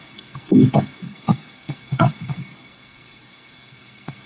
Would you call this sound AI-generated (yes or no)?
yes